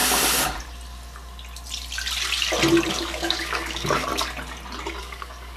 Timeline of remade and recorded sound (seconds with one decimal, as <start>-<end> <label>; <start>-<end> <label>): 0.0-2.9 recorded; 2.9-4.1 remade; 4.1-5.0 recorded; 5.0-5.6 remade